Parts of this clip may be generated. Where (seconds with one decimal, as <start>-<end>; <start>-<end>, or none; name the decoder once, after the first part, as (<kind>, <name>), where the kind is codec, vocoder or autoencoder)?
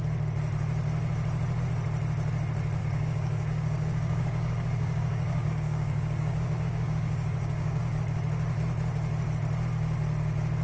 2.8-7.8 (codec, DAC)